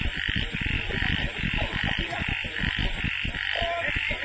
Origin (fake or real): real